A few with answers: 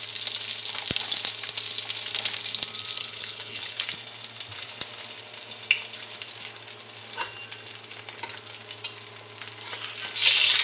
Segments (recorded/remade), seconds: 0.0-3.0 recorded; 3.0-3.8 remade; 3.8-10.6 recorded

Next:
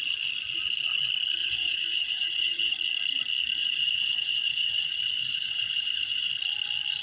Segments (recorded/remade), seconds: 0.0-1.4 recorded; 1.4-2.7 remade; 2.7-3.6 recorded; 3.6-6.3 remade; 6.3-7.0 recorded

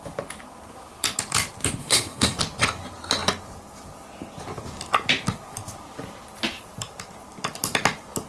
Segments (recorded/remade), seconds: 0.0-1.8 recorded; 1.8-2.4 remade; 2.4-8.3 recorded

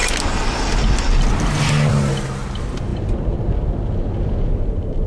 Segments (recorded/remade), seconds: 0.0-5.1 recorded

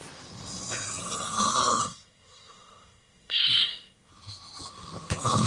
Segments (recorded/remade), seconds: 0.0-1.8 recorded; 1.8-4.1 remade; 4.1-5.5 recorded

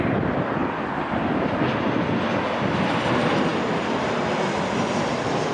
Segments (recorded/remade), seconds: 0.0-5.5 recorded

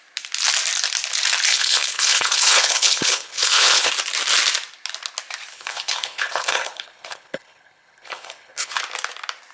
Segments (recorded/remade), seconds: 0.0-1.5 recorded; 1.5-3.9 remade; 3.9-5.5 recorded; 5.5-8.8 remade; 8.8-9.5 recorded

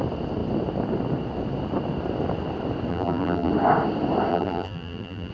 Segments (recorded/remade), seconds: 0.0-2.9 recorded; 2.9-3.5 remade; 3.5-4.3 recorded; 4.3-5.3 remade